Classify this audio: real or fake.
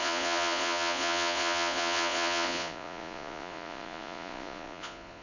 fake